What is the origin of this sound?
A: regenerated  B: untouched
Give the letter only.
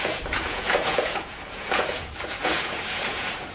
A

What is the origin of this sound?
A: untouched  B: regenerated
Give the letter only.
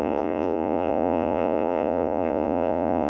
B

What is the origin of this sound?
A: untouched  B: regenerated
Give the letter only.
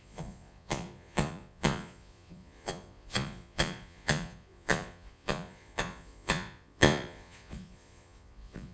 B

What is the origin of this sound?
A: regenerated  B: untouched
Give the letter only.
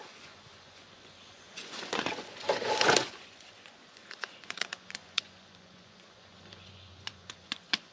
A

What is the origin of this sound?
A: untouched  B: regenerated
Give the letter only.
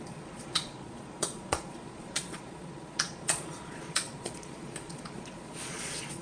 B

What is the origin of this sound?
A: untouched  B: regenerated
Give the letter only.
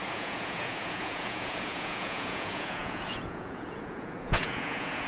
B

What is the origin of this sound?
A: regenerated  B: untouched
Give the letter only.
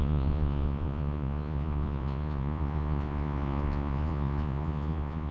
A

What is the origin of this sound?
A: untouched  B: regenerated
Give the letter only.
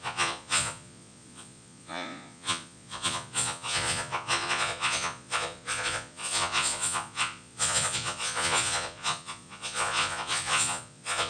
B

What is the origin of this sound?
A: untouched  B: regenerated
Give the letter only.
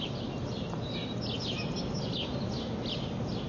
A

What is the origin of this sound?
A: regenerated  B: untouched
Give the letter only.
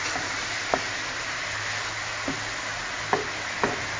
B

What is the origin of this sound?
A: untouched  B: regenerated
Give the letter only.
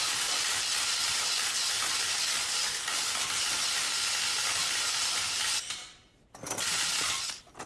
A